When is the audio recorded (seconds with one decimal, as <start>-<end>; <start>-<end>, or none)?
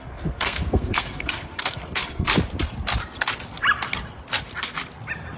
2.3-5.4